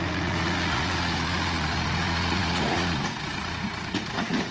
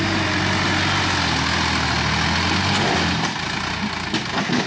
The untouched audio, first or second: second